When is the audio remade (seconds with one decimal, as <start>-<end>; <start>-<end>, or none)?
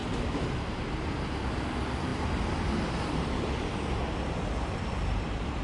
0.0-1.1; 2.1-5.6